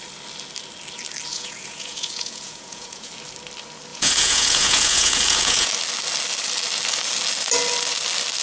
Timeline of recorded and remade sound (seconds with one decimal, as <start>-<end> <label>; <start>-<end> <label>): 0.0-1.3 recorded; 1.3-3.1 remade; 3.1-3.9 recorded; 3.9-5.7 remade; 5.7-8.4 recorded